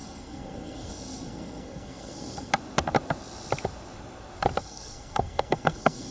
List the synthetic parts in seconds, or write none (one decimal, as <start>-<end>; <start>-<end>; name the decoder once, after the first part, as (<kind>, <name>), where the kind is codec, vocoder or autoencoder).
0.0-2.5 (codec, SNAC); 4.6-6.1